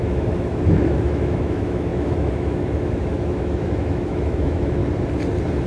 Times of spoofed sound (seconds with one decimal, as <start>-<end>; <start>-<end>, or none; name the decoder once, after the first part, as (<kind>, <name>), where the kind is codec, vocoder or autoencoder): 0.0-4.8 (autoencoder, DAC-VAE)